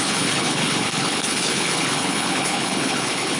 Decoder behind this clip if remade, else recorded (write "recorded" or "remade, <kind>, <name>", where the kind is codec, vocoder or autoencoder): remade, codec, HILCodec